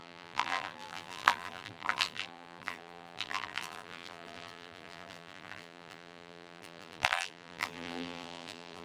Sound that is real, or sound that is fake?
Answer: fake